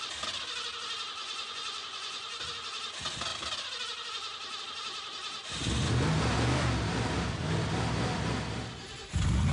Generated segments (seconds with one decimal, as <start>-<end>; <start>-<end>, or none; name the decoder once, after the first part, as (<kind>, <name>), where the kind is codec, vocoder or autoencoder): 1.2-2.4 (vocoder, Vocos)